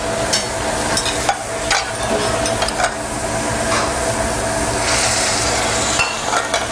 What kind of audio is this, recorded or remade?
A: recorded